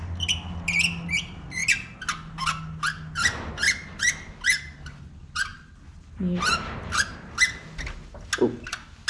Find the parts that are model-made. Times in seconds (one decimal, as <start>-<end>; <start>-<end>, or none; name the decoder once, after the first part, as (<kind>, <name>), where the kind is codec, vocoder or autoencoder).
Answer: none